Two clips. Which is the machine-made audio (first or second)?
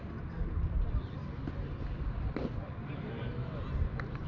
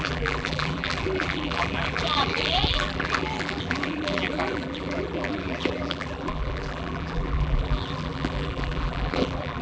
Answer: second